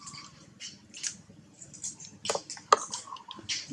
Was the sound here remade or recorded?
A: recorded